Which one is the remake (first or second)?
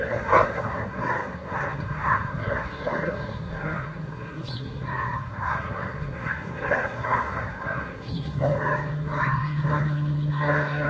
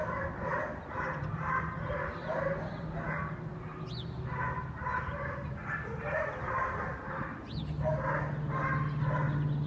first